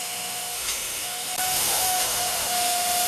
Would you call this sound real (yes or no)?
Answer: no